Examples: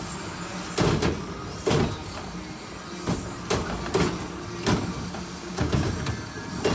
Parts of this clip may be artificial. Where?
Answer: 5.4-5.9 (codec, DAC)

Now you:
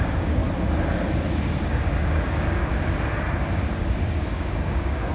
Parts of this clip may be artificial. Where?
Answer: 0.0-0.4 (codec, DAC); 1.6-2.7; 3.7-5.1

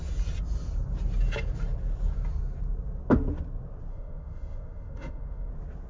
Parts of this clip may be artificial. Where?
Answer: 3.9-5.5 (autoencoder, DAC-VAE)

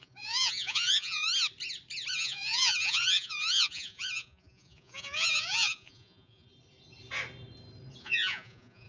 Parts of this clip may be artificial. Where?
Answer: 0.0-1.3 (vocoder, Vocos); 2.1-6.5; 8.0-8.9

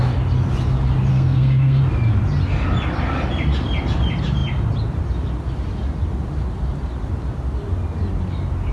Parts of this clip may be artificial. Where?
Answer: 1.1-1.8 (codec, SNAC)

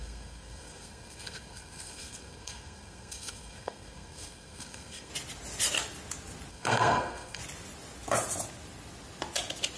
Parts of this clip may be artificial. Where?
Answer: 0.0-5.1 (codec, SNAC); 6.5-7.4